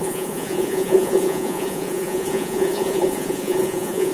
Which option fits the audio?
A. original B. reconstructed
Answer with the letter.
B